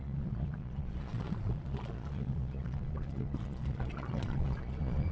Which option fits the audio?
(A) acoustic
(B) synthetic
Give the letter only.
B